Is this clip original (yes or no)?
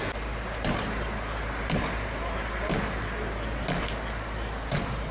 yes